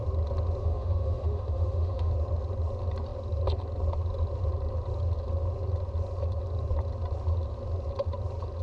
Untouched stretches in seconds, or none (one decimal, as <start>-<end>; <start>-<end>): 0.0-0.6; 2.1-8.6